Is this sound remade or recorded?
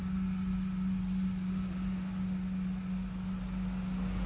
recorded